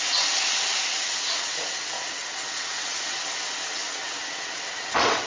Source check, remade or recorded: remade